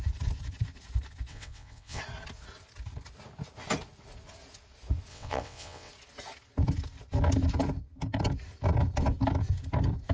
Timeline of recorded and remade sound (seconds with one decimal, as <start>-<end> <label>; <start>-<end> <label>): 0.0-1.3 recorded; 1.3-2.0 remade; 2.0-5.1 recorded; 5.1-5.9 remade; 5.9-10.1 recorded